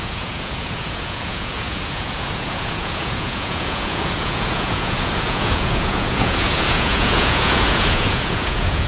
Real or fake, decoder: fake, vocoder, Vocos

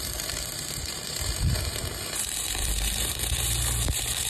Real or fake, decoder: fake, vocoder, BigVGAN v2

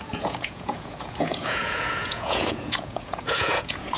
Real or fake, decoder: fake, vocoder, Vocos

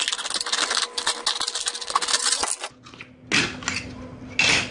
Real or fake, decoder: real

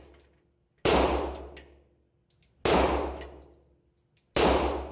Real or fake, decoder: real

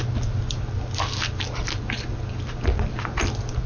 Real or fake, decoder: real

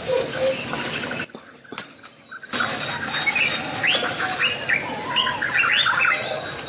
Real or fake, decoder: real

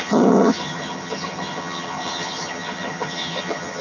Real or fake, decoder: fake, vocoder, HiFi-GAN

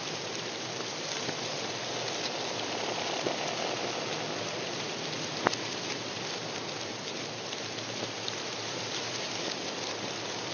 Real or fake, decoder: real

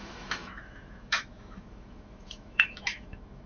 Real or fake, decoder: fake, autoencoder, DAC-VAE